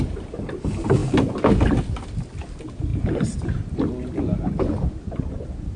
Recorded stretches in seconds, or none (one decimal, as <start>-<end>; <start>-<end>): 0.0-5.8

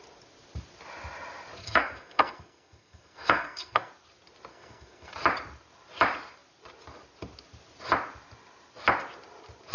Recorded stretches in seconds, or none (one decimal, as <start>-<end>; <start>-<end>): 0.0-1.6; 3.9-4.5; 5.1-9.7

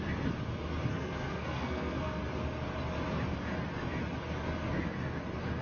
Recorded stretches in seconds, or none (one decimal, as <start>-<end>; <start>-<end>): 0.0-0.9; 2.2-5.6

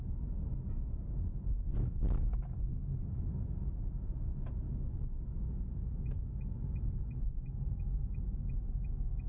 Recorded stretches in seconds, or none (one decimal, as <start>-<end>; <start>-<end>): 0.0-9.3

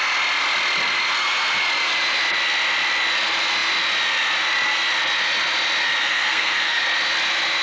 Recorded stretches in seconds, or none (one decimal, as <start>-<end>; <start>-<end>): 0.0-6.0; 6.8-7.6